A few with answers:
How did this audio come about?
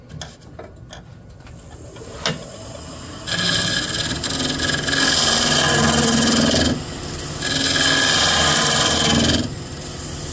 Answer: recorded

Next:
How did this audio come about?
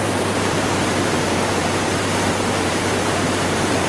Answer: remade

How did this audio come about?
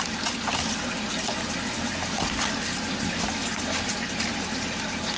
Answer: recorded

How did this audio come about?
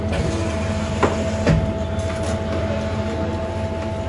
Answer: recorded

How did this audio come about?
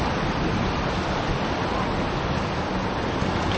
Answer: recorded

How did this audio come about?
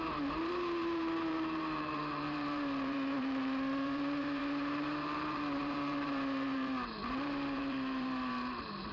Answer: remade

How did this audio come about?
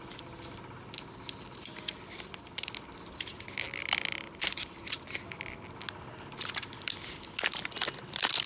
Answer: recorded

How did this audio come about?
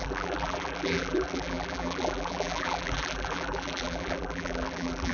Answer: remade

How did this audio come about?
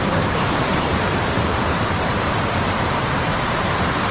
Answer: remade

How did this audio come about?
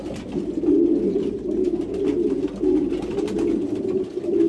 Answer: recorded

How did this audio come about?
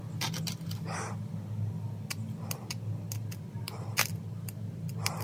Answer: recorded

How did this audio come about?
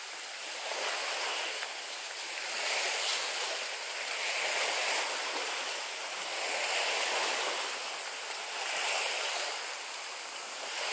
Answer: recorded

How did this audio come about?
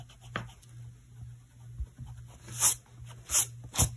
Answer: recorded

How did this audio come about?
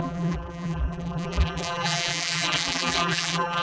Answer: remade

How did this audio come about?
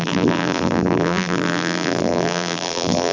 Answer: remade